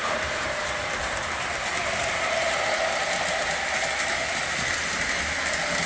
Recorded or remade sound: recorded